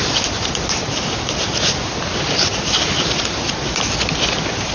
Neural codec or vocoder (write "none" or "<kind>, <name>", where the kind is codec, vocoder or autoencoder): none